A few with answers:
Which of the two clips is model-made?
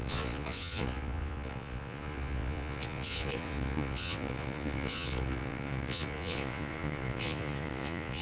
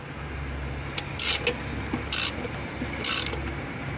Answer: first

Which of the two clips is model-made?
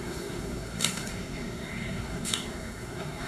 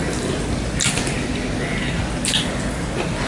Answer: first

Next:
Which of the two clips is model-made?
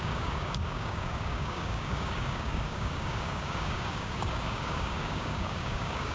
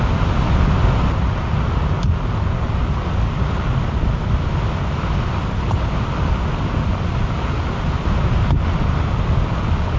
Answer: first